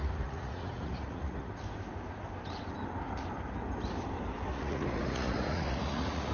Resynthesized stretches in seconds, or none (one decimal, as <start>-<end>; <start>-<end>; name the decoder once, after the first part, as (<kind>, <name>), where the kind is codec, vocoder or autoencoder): 0.0-1.5 (vocoder, Vocos); 4.5-6.3